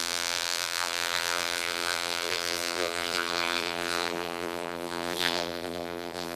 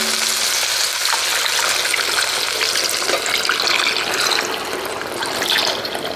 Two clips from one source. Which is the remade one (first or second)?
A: first